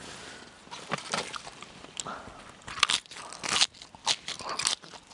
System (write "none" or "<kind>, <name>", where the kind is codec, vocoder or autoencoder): none